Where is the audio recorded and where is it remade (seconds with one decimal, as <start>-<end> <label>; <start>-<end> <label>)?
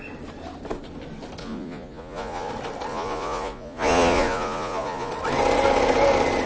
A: 0.0-1.4 recorded; 1.4-2.5 remade; 2.5-2.9 recorded; 2.9-5.1 remade; 5.1-6.5 recorded